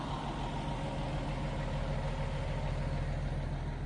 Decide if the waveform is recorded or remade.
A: recorded